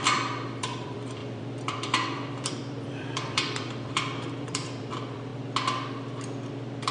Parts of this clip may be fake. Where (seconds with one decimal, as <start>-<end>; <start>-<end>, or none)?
0.0-5.3; 6.5-6.9